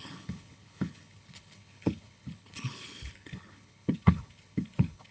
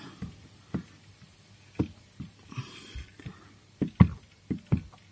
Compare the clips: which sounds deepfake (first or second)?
first